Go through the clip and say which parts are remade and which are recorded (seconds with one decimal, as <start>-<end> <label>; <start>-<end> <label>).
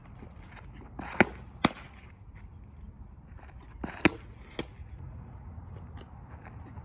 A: 0.0-4.8 recorded; 4.8-5.5 remade; 5.5-6.8 recorded